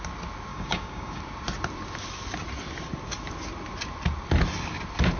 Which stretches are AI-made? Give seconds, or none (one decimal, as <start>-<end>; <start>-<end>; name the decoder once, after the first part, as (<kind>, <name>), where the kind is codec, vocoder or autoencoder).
0.5-1.2 (codec, DAC)